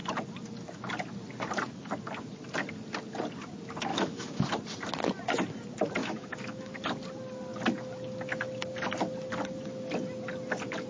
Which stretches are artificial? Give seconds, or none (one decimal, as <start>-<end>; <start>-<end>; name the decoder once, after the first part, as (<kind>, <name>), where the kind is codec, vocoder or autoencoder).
3.9-4.4 (autoencoder, DAC-VAE); 6.0-6.7